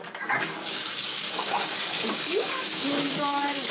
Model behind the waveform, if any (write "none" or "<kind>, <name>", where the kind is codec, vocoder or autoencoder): codec, DAC